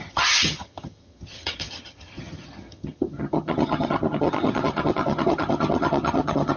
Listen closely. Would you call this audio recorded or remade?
remade